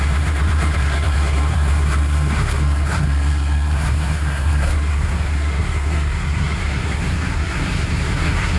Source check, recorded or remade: remade